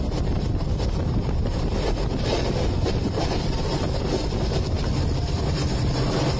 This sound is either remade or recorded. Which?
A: remade